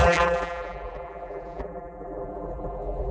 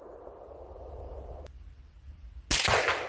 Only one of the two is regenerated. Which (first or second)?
first